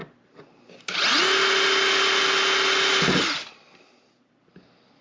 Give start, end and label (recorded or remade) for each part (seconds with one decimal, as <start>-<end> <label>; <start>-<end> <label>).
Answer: 0.0-5.0 recorded